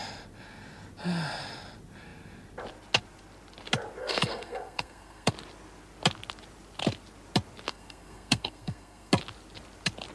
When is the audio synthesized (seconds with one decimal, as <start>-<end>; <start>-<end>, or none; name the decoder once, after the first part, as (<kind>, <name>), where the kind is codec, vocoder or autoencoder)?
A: 4.0-5.3 (codec, SNAC); 7.7-9.1